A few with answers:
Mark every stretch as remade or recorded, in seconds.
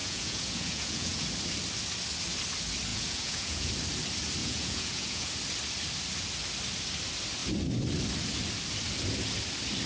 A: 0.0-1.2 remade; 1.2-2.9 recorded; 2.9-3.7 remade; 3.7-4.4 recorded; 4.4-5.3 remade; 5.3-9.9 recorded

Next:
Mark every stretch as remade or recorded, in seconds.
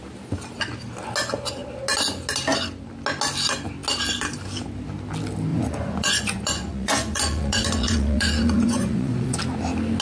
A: 0.0-5.5 recorded; 5.5-9.4 remade; 9.4-10.0 recorded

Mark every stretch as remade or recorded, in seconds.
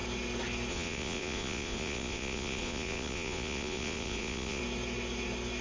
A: 0.0-0.7 recorded; 0.7-4.6 remade; 4.6-5.6 recorded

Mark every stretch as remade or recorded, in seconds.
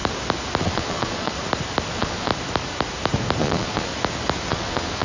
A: 0.0-0.6 recorded; 0.6-1.3 remade; 1.3-1.9 recorded; 1.9-2.3 remade; 2.3-3.4 recorded; 3.4-3.9 remade; 3.9-4.5 recorded; 4.5-5.0 remade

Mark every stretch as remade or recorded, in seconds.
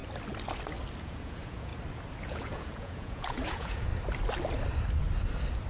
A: 0.0-1.0 recorded; 1.0-1.7 remade; 1.7-2.2 recorded; 2.2-3.9 remade; 3.9-5.7 recorded